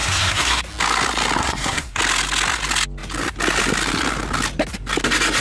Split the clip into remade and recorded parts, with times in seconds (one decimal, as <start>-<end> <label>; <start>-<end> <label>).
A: 0.0-0.6 remade; 0.6-1.4 recorded; 1.4-2.0 remade; 2.0-5.4 recorded

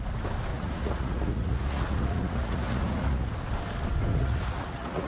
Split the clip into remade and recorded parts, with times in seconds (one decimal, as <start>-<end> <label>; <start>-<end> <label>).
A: 0.0-0.5 recorded; 0.5-3.3 remade; 3.3-4.1 recorded; 4.1-5.1 remade

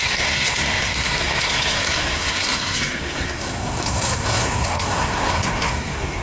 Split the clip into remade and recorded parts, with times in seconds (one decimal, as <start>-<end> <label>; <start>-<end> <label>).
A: 0.0-6.2 remade

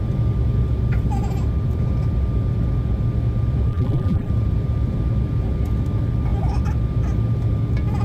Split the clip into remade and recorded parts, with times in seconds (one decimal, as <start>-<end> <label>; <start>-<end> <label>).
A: 0.0-3.7 recorded; 3.7-4.3 remade; 4.3-8.0 recorded

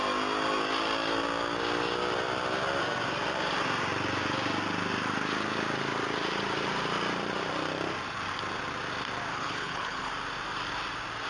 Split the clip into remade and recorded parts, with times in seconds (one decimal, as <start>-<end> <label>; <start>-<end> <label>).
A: 0.0-9.3 recorded; 9.3-10.1 remade; 10.1-11.3 recorded

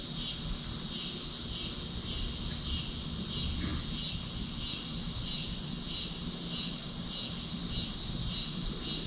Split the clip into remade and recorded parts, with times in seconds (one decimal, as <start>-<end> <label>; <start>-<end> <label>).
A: 0.0-9.1 recorded

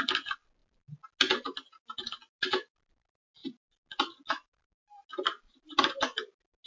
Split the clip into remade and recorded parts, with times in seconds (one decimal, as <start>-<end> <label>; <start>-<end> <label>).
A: 0.0-6.7 recorded